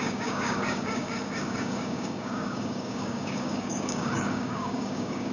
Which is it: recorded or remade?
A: remade